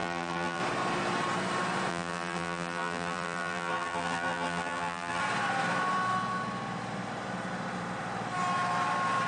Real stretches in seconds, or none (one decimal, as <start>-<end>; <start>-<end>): 0.6-1.9; 5.2-9.3